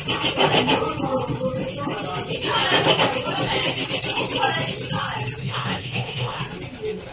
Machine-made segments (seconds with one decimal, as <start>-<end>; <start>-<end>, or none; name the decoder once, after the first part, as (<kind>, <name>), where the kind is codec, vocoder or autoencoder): 5.4-6.4 (autoencoder, DAC-VAE)